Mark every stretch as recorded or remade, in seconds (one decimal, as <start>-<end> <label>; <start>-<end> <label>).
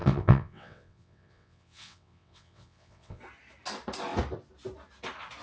0.0-3.2 remade; 3.2-5.4 recorded